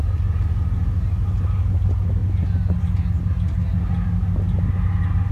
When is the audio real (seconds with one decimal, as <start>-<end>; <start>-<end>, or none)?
0.0-5.3

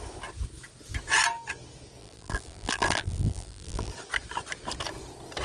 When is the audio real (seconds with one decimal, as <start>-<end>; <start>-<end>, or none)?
0.0-2.0; 3.9-5.4

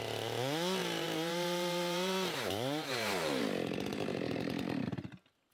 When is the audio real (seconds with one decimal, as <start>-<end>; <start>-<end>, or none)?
0.0-0.8; 3.4-3.9; 4.4-5.5

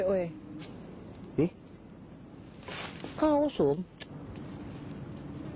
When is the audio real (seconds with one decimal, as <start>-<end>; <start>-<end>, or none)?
0.0-5.6

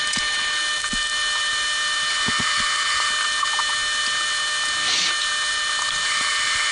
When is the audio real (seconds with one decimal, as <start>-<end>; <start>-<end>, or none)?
0.0-6.7